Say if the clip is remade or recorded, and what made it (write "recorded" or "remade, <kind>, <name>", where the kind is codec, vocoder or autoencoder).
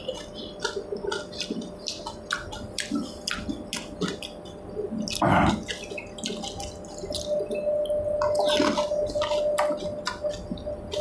recorded